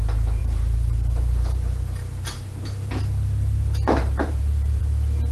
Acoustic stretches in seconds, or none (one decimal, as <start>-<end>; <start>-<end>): 0.0-0.4; 3.0-4.0; 4.8-5.3